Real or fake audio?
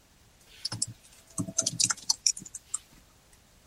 fake